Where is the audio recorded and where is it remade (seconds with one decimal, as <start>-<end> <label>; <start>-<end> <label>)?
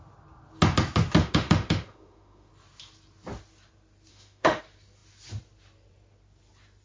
0.0-1.2 recorded; 1.2-2.5 remade; 2.5-4.1 recorded; 4.1-4.6 remade; 4.6-6.8 recorded